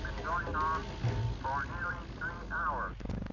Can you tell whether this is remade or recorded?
recorded